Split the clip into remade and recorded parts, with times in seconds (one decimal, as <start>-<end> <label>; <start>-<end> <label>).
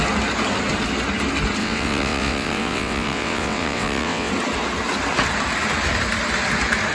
0.0-1.6 recorded; 1.6-4.3 remade; 4.3-6.9 recorded